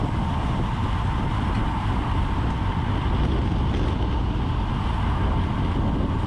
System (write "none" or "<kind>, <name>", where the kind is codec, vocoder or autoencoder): none